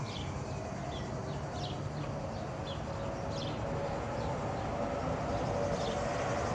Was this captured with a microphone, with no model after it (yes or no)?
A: yes